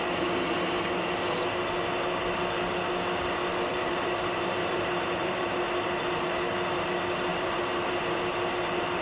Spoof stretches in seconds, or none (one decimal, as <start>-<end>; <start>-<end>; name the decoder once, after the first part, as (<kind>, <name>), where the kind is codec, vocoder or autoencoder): 3.7-5.6 (vocoder, BigVGAN v2); 7.3-8.0